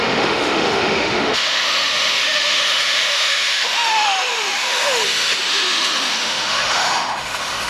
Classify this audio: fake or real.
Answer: fake